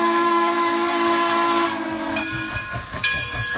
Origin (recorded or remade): remade